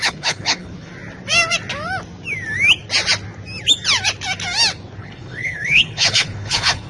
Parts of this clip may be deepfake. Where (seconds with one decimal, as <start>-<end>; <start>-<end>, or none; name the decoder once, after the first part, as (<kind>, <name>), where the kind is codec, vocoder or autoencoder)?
0.0-0.9 (codec, HILCodec); 5.0-6.9